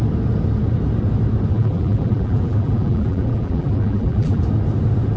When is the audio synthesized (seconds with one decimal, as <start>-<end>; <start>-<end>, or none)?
1.5-4.4